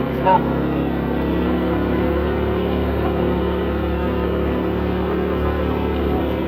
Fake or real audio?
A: fake